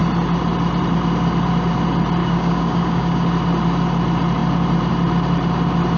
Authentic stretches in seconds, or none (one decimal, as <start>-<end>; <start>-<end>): 0.0-2.2; 3.3-6.0